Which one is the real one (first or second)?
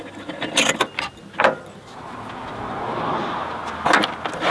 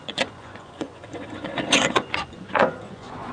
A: first